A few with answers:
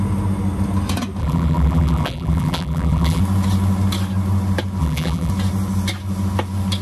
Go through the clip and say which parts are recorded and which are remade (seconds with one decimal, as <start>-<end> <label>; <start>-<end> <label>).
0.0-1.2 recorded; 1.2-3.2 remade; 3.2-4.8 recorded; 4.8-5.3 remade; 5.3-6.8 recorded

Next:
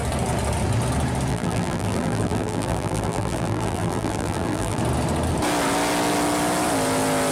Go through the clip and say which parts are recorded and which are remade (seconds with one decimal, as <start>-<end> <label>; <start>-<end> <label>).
0.0-1.3 recorded; 1.3-4.8 remade; 4.8-7.3 recorded

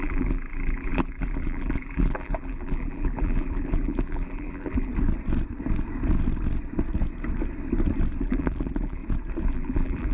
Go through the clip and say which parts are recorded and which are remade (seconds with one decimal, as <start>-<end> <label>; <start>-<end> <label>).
0.0-4.9 remade; 4.9-8.2 recorded; 8.2-9.0 remade; 9.0-9.5 recorded; 9.5-10.1 remade

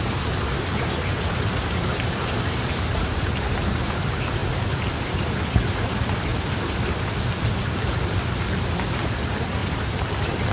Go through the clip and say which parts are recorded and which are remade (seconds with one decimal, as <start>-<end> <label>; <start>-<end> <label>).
0.0-4.4 remade; 4.4-5.0 recorded; 5.0-6.3 remade; 6.3-9.0 recorded; 9.0-10.5 remade

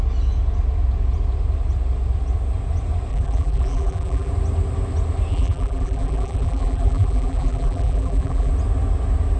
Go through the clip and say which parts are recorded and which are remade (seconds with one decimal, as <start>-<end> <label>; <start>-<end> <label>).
0.0-3.1 recorded; 3.1-4.3 remade; 4.3-5.3 recorded; 5.3-8.5 remade; 8.5-9.4 recorded